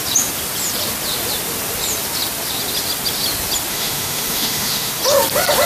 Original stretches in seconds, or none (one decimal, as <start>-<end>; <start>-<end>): 0.0-3.7; 5.0-5.7